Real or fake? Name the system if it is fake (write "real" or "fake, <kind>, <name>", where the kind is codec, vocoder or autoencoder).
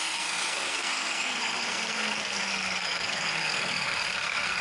fake, codec, SNAC